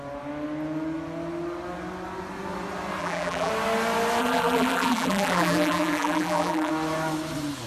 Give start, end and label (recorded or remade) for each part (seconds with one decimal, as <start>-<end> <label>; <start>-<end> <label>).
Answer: 0.0-3.0 recorded; 3.0-3.5 remade; 3.5-4.2 recorded; 4.2-6.7 remade; 6.7-7.7 recorded